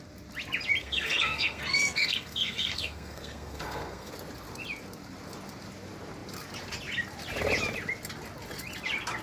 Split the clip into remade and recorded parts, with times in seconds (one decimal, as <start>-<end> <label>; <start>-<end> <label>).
0.0-0.8 recorded; 0.8-4.1 remade; 4.1-9.2 recorded